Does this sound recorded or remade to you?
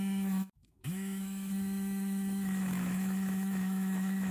remade